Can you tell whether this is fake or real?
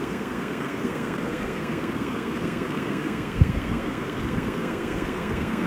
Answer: fake